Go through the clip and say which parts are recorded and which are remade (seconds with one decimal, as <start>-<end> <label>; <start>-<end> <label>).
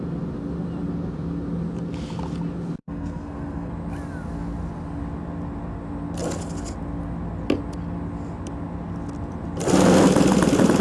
0.0-2.8 recorded; 2.8-3.7 remade; 3.7-10.8 recorded